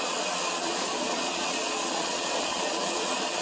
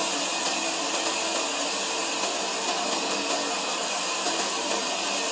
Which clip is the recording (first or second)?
second